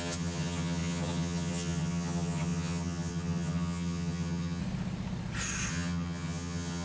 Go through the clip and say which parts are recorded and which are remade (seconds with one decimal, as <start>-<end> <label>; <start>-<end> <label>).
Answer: 0.0-4.6 remade; 4.6-5.7 recorded; 5.7-6.8 remade